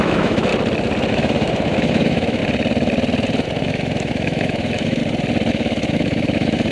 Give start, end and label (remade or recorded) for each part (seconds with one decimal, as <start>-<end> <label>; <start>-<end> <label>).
0.0-0.5 remade; 0.5-1.1 recorded; 1.1-2.4 remade; 2.4-3.6 recorded; 3.6-5.0 remade; 5.0-5.5 recorded; 5.5-6.7 remade